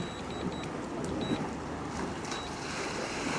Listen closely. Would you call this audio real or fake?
real